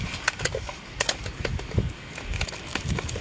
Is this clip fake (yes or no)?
yes